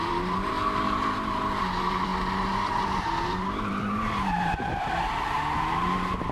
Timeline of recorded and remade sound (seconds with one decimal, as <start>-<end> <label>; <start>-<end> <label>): 0.0-6.3 remade